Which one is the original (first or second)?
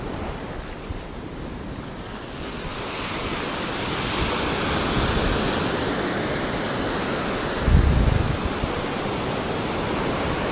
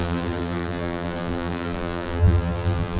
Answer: first